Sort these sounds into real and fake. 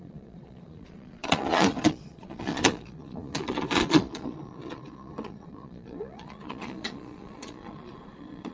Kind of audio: fake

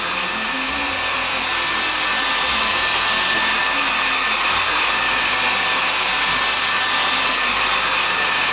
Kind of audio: real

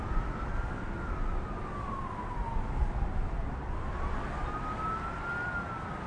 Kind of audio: real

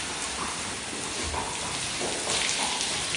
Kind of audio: real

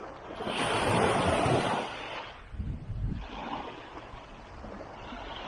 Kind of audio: real